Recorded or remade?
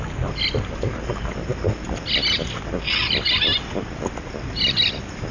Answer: recorded